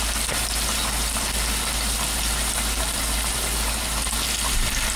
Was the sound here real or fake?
real